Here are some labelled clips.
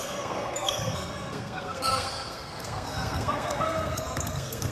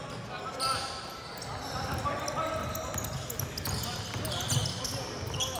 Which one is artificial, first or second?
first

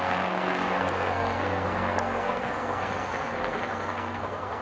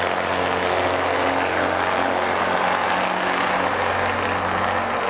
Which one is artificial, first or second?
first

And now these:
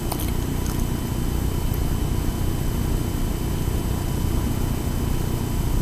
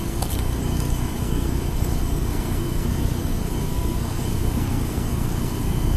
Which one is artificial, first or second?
second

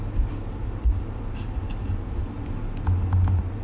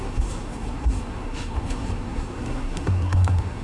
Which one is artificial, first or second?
second